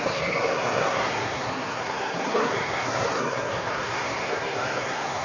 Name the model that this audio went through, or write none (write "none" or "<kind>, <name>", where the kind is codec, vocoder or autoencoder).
codec, SNAC